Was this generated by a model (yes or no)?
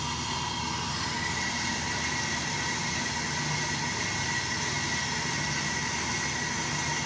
no